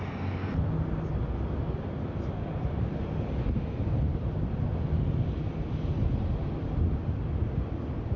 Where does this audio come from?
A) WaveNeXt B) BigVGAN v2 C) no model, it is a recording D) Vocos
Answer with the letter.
C